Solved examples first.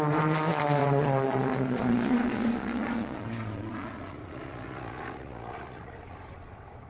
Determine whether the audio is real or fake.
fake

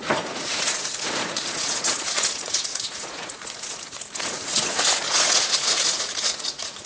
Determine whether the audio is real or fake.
fake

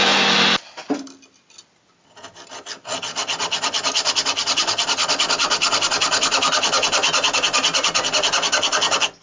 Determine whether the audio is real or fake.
real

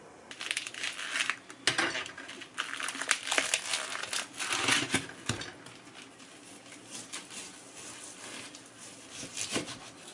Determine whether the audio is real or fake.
real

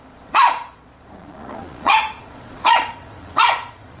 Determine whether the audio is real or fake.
fake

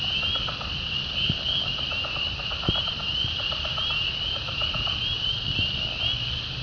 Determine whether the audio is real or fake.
real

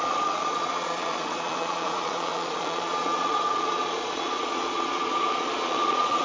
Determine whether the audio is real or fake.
fake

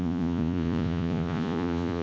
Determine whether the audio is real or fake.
fake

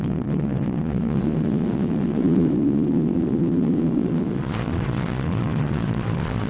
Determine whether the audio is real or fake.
fake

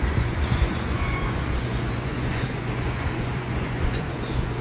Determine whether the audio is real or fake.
fake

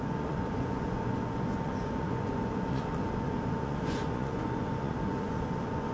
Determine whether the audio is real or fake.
fake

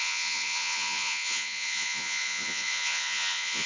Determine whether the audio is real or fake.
fake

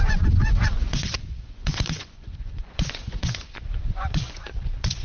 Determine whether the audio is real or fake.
fake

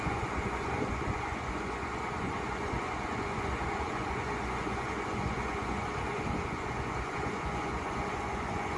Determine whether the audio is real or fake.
fake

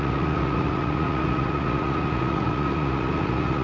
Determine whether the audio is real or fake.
fake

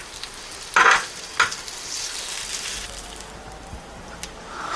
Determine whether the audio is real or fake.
real